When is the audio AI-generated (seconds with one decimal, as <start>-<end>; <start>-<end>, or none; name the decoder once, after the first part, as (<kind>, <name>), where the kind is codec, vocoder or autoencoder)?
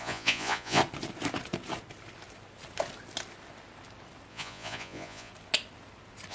0.0-0.8 (vocoder, Vocos); 4.3-5.3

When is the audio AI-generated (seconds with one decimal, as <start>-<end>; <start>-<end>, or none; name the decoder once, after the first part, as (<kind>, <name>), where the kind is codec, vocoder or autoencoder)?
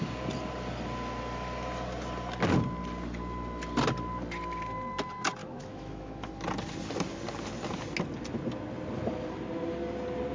5.4-6.3 (autoencoder, DAC-VAE)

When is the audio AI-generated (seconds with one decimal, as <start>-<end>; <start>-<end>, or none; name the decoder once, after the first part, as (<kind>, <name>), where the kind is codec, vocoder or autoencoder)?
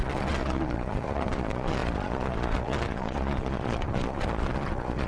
0.0-5.1 (vocoder, Vocos)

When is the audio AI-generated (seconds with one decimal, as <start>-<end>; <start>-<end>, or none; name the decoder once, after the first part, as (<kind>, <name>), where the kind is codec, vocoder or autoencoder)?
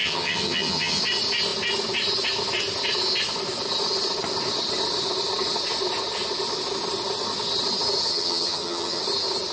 0.0-1.0 (vocoder, HiFi-GAN); 8.1-9.0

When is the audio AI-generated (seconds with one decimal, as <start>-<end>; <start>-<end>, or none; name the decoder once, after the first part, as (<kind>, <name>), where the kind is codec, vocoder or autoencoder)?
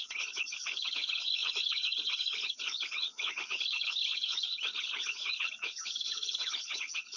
0.0-7.2 (codec, HILCodec)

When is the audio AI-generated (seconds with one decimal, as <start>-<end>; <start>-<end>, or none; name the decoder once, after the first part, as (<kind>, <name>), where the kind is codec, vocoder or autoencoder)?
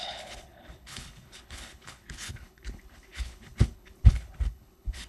0.0-5.1 (codec, HILCodec)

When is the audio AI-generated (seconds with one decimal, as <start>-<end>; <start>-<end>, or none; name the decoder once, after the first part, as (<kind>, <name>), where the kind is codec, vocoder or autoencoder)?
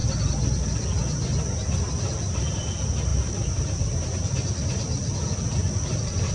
none